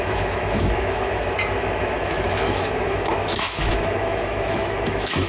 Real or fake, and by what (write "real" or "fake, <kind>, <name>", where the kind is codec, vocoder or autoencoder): fake, autoencoder, DAC-VAE